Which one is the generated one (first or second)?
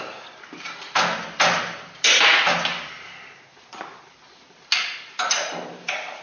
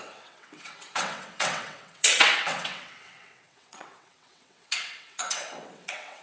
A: second